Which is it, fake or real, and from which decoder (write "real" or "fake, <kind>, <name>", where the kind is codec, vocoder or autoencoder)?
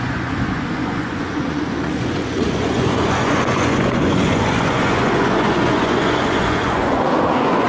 fake, vocoder, Vocos